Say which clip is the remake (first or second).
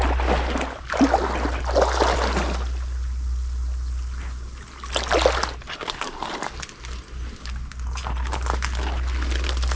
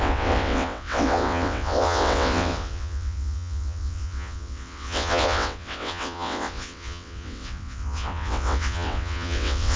second